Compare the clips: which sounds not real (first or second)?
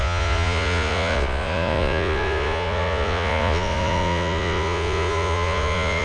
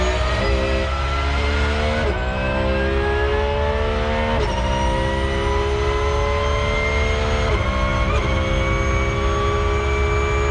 first